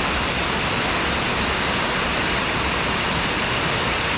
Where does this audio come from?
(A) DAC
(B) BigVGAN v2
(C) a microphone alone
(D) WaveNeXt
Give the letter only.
C